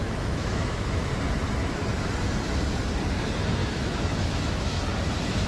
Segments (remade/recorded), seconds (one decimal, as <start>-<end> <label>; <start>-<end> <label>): 0.0-1.0 remade; 1.0-3.6 recorded; 3.6-4.8 remade; 4.8-5.5 recorded